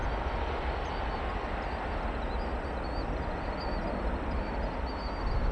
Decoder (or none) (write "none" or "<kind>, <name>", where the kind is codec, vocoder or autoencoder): none